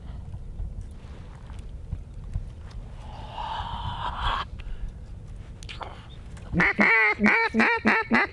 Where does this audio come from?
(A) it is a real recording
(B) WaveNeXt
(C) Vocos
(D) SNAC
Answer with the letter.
A